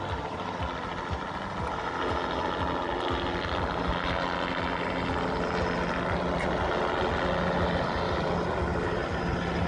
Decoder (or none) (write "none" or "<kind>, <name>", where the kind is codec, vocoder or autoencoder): none